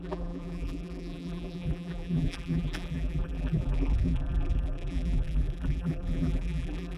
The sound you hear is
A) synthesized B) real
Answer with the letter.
A